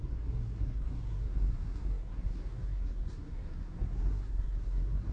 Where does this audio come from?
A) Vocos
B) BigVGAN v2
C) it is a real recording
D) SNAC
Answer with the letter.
D